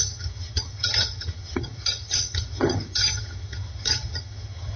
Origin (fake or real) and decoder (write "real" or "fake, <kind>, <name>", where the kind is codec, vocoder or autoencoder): fake, vocoder, HiFi-GAN